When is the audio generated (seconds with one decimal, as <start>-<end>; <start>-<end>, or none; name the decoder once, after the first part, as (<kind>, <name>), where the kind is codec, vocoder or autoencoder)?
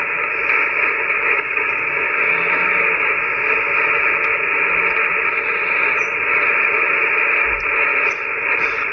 1.2-2.7 (codec, DAC)